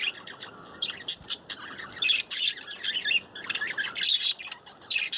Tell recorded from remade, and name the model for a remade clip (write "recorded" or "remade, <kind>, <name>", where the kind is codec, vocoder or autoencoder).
recorded